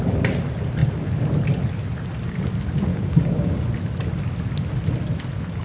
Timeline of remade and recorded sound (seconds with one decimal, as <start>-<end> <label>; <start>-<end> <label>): 0.0-2.9 recorded; 2.9-3.6 remade; 3.6-5.6 recorded